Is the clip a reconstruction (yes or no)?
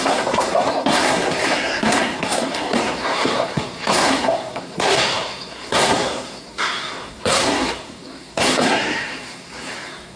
yes